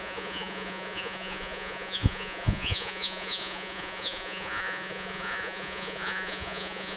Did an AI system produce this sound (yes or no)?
yes